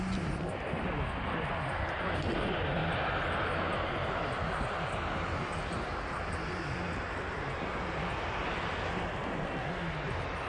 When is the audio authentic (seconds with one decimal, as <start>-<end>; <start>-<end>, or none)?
0.0-10.5